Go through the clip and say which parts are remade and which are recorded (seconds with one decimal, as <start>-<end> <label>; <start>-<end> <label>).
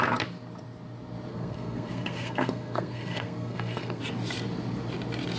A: 0.0-1.3 recorded; 1.3-4.0 remade; 4.0-5.4 recorded